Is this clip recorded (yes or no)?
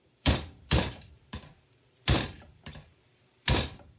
no